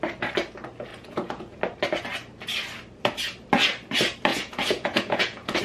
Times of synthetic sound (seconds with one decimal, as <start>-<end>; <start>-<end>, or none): 0.9-1.6; 4.3-5.6